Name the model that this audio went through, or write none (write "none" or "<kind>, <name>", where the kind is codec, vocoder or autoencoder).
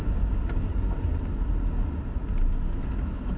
none